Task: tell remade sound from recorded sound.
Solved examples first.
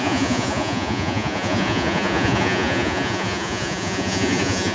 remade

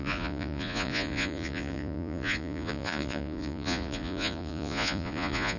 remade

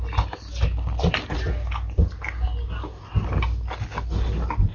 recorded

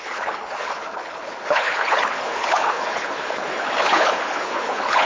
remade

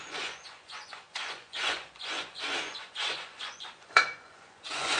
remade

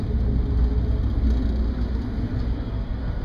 recorded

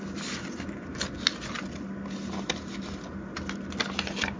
recorded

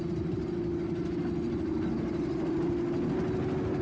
recorded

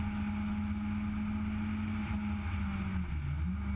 recorded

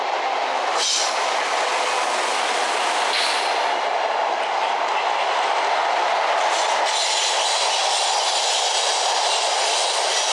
recorded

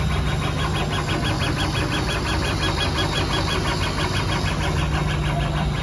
recorded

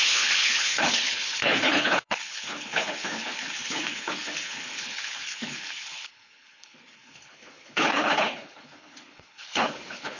remade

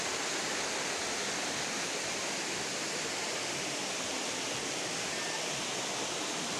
recorded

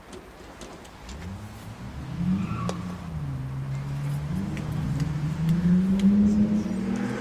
recorded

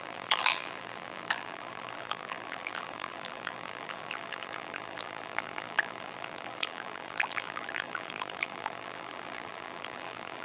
remade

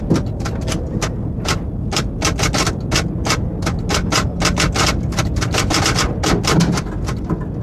recorded